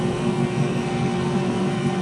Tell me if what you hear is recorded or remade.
remade